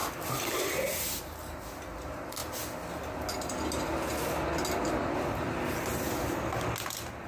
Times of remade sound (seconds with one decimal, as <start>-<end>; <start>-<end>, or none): none